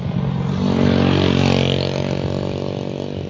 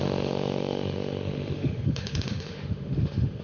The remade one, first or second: second